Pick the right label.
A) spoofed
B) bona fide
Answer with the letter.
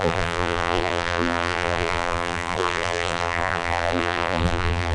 A